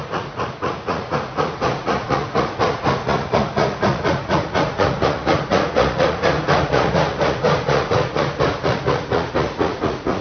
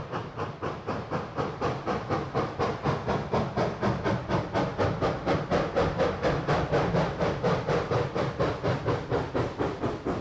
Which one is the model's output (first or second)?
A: first